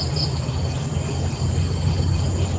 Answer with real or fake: real